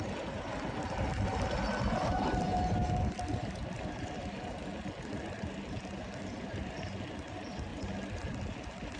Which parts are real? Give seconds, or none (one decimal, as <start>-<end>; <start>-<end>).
0.0-9.0